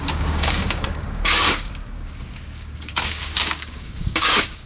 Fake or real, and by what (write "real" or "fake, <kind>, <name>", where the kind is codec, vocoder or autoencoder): fake, codec, DAC